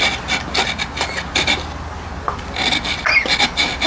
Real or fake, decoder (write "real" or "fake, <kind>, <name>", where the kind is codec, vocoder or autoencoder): real